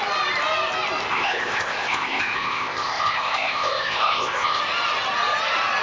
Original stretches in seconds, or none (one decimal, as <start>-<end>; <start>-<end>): 0.0-1.1; 4.6-5.8